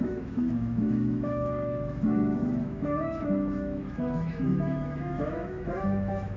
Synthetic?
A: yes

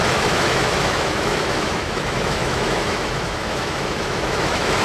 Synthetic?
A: yes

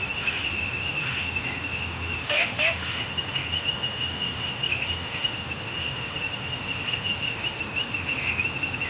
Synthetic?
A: yes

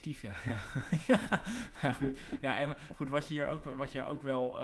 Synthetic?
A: yes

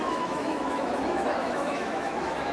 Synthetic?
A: yes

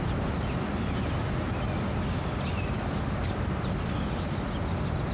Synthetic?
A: no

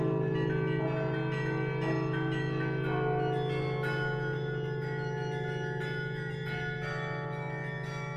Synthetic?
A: no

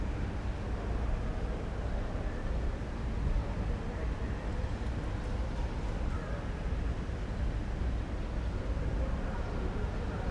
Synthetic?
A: no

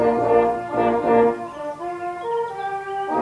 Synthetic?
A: no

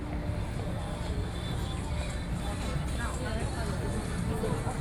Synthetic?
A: no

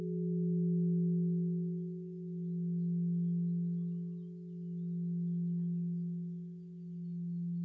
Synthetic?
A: no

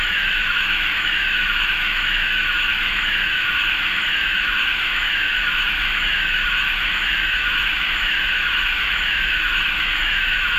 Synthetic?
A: yes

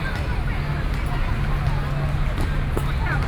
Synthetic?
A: no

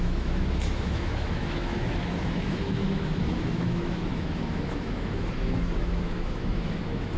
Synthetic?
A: yes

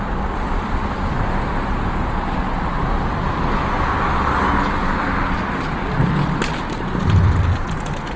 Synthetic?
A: no